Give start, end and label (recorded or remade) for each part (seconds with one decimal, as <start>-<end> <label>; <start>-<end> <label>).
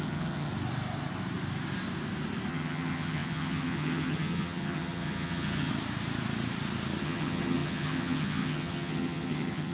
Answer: 0.0-0.5 remade; 0.5-2.5 recorded; 2.5-5.7 remade; 5.7-7.0 recorded; 7.0-9.7 remade